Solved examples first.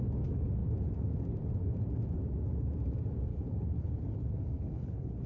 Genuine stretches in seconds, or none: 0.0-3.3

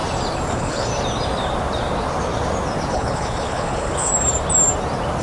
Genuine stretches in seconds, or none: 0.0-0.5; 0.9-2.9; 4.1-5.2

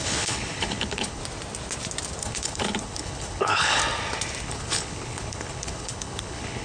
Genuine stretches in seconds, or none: 1.2-2.2; 3.8-4.4

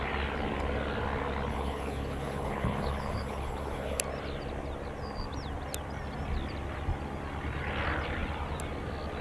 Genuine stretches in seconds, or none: 0.0-1.5; 4.0-9.2

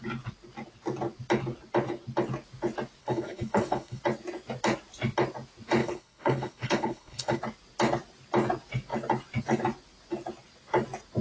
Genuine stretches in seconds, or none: 0.0-3.0; 4.0-5.8; 7.4-11.2

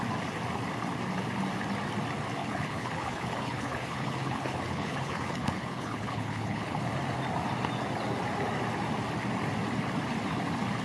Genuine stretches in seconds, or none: 0.0-2.4; 6.8-10.8

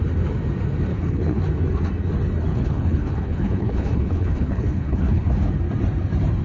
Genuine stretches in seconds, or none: 0.0-0.9; 1.4-2.5; 5.3-6.4

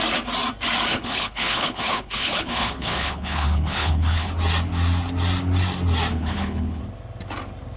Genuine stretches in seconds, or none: 0.0-0.9; 4.3-6.1; 6.8-7.8